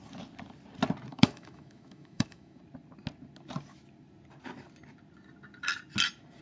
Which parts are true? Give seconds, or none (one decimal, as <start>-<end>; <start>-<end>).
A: 0.0-1.1; 2.6-6.4